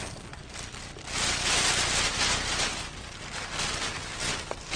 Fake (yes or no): no